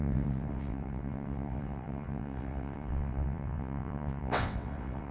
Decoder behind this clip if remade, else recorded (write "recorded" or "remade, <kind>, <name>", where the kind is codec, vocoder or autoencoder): remade, vocoder, WaveNeXt